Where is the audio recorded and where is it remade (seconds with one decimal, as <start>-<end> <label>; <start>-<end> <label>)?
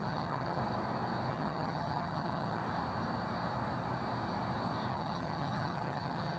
0.0-0.6 remade; 0.6-1.3 recorded; 1.3-2.6 remade; 2.6-4.9 recorded; 4.9-6.4 remade